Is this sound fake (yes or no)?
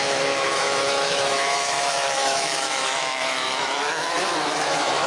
yes